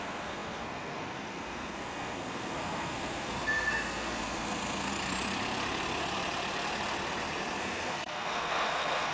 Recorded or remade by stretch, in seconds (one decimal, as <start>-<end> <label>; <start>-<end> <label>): 0.0-4.9 remade; 4.9-7.6 recorded; 7.6-9.1 remade